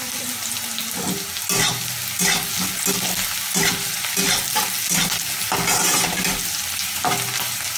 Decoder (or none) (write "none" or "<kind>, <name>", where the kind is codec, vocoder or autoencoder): none